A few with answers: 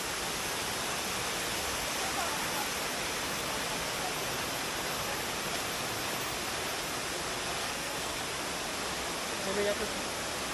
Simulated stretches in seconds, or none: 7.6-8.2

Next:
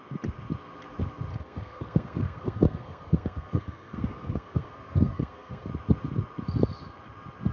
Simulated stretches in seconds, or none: 1.3-5.7

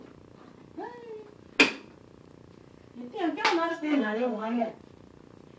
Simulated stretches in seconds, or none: 3.7-4.7